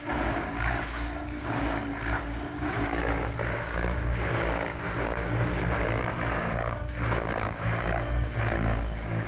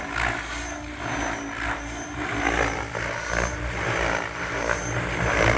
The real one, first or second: second